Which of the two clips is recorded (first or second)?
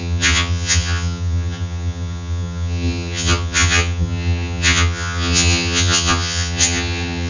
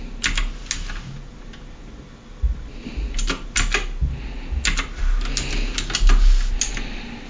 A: second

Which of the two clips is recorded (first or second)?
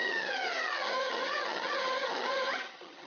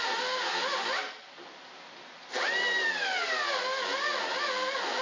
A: second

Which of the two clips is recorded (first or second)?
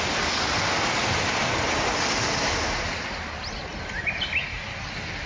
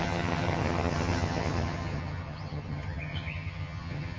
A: first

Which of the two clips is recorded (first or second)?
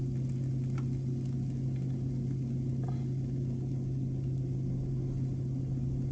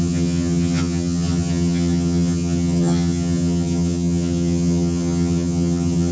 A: first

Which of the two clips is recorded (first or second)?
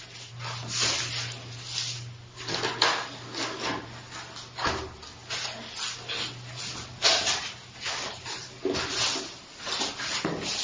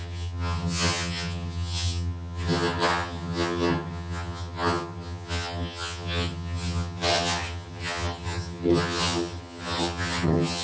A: first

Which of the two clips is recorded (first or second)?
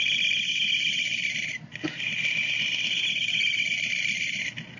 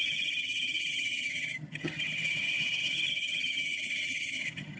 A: first